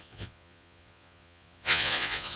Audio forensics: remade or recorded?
remade